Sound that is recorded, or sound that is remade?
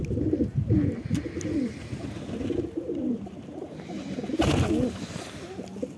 recorded